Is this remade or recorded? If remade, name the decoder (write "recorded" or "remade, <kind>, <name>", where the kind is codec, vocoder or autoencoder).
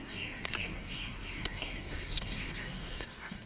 remade, codec, SNAC